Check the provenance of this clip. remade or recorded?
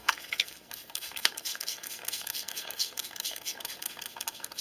remade